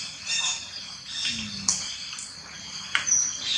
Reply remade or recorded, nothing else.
recorded